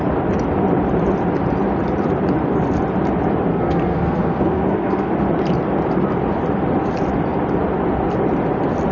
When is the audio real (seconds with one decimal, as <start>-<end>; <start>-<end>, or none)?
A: 0.0-3.5; 5.1-8.9